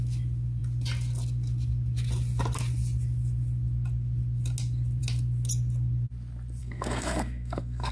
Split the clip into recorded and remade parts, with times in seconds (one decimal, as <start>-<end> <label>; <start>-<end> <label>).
0.0-6.6 recorded; 6.6-7.9 remade